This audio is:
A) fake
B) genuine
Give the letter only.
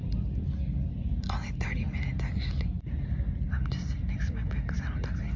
B